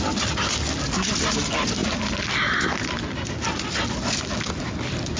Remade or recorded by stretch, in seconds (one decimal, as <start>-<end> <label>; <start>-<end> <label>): 0.0-5.2 recorded